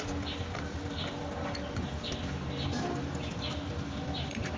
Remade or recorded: recorded